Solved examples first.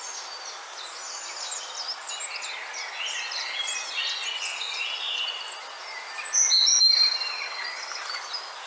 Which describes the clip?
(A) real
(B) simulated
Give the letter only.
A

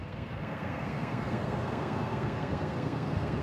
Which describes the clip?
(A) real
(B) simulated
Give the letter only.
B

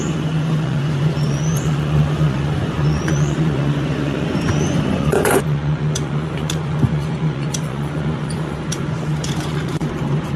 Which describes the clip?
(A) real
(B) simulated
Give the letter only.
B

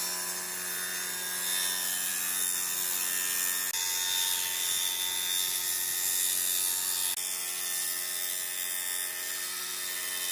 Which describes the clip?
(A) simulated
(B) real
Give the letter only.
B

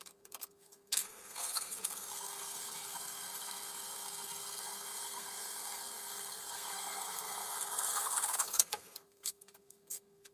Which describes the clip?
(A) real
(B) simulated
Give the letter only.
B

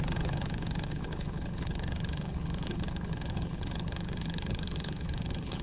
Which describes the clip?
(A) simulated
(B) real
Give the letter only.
A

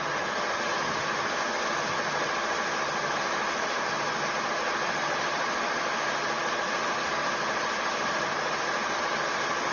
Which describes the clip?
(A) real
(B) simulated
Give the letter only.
A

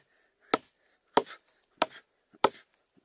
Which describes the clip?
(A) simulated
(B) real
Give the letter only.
B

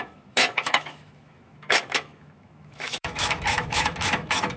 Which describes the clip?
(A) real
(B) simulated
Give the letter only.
B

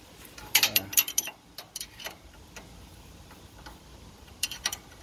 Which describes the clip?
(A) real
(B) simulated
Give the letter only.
B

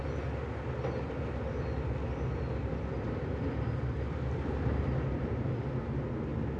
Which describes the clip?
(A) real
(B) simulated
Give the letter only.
A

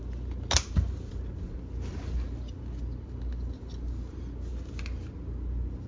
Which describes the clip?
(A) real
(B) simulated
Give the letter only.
A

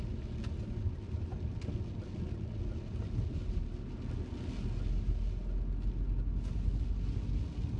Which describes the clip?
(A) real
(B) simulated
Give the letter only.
A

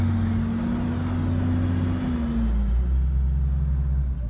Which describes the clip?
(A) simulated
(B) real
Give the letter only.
B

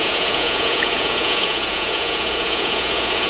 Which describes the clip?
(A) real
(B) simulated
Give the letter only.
B